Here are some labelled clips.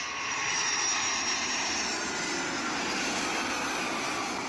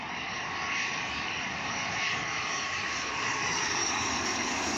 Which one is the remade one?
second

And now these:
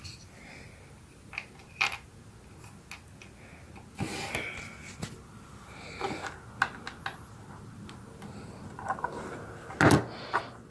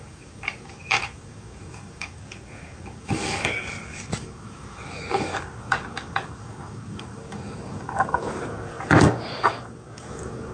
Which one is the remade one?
second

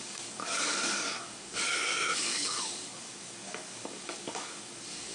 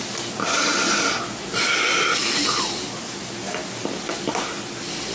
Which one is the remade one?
first